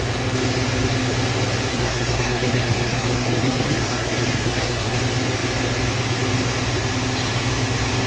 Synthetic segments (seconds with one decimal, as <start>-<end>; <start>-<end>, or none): 1.7-5.0